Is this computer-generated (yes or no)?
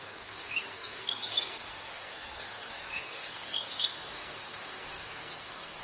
yes